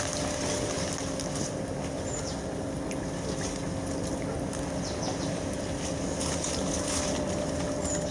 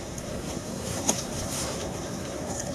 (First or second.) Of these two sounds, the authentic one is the first